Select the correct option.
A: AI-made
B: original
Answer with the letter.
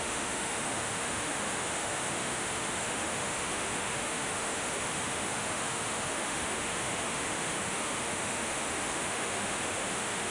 A